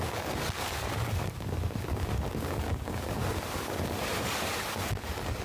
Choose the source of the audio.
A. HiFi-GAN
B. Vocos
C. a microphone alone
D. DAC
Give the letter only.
D